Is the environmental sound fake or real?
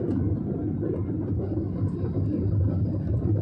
fake